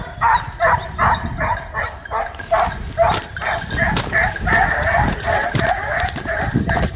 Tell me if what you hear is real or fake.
real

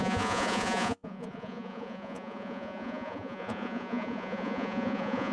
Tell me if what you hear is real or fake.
fake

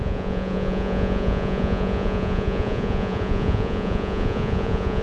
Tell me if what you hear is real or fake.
fake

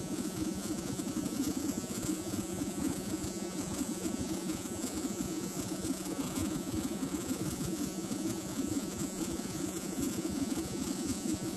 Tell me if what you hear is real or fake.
fake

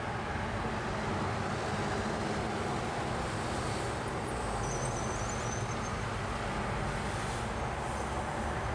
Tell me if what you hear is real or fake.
real